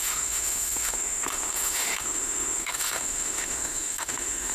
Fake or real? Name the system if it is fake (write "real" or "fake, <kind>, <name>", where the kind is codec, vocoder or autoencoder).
fake, autoencoder, DAC-VAE